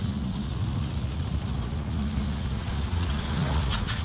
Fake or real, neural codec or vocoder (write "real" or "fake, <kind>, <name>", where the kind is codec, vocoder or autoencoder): fake, vocoder, Vocos